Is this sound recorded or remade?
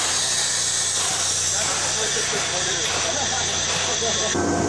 recorded